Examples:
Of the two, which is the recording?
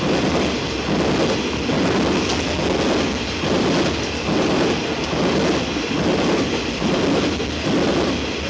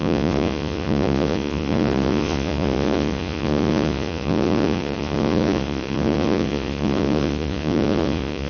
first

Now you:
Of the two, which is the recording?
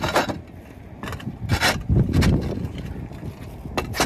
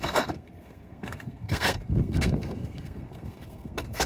first